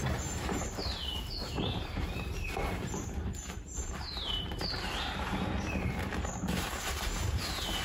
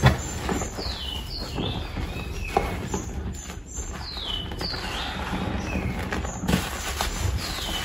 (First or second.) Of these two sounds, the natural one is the second